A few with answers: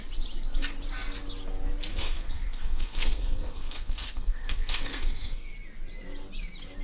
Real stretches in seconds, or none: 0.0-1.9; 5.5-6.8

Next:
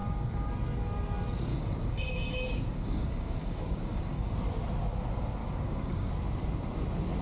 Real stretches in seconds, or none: 0.5-1.5; 4.4-5.4; 6.1-7.2

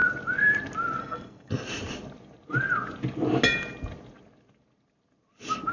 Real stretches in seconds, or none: 0.0-1.0; 1.5-5.7

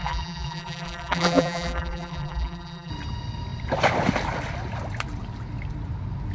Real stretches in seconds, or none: 2.9-6.3